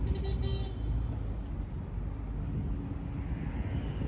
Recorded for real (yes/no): yes